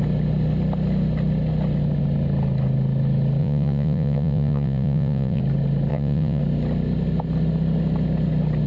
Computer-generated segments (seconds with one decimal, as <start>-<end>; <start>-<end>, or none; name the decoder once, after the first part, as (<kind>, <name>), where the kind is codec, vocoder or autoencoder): 3.4-5.4 (vocoder, Vocos); 5.9-6.4